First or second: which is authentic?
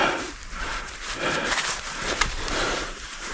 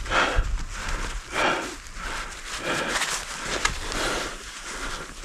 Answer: second